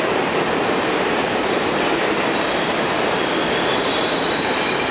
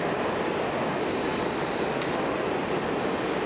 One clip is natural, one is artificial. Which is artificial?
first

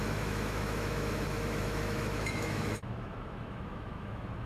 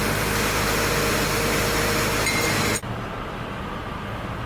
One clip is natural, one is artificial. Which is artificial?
first